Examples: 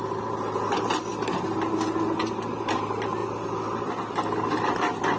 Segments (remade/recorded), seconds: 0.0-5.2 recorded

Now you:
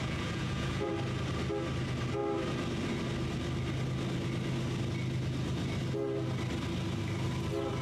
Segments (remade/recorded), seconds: 0.0-0.9 remade; 0.9-7.8 recorded

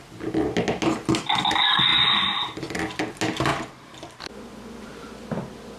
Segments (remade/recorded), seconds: 0.0-1.9 recorded; 1.9-3.1 remade; 3.1-3.5 recorded; 3.5-4.2 remade; 4.2-5.8 recorded